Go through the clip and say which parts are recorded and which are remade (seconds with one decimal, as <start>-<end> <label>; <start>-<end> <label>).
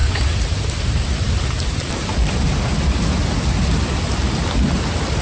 0.0-3.1 remade; 3.1-5.2 recorded